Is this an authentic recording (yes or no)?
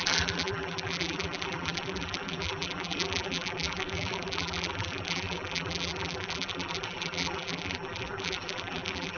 no